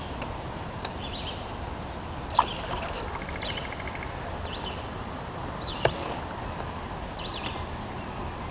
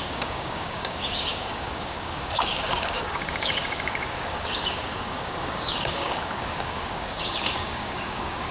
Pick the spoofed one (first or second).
second